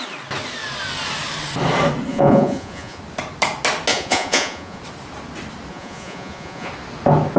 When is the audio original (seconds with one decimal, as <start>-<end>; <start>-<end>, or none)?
0.0-2.1; 3.0-3.9; 4.8-5.7; 6.7-7.4